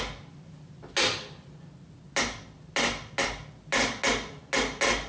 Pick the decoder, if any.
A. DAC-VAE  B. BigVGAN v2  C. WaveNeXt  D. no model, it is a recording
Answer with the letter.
D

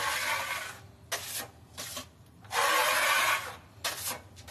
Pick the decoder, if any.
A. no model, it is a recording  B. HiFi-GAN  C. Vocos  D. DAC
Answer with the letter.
A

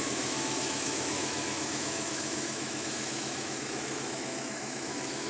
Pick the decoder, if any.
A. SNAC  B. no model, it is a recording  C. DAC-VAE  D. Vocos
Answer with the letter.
C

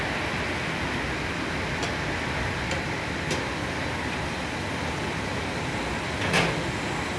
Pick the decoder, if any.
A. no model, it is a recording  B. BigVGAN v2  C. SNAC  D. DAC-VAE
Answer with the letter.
A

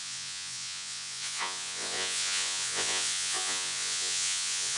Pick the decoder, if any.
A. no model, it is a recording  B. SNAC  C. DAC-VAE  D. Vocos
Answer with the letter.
D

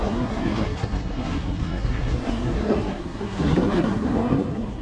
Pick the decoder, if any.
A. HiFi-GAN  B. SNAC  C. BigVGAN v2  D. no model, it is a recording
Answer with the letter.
B